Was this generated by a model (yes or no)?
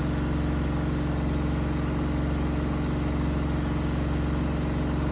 no